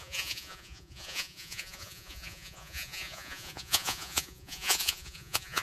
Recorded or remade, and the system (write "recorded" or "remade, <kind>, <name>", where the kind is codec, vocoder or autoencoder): remade, vocoder, Vocos